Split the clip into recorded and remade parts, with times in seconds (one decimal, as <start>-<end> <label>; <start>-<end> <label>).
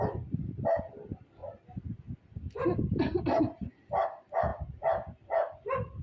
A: 0.0-6.0 recorded